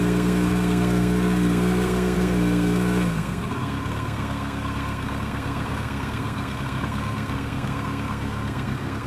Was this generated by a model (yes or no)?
yes